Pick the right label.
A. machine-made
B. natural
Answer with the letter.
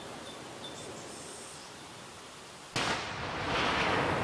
B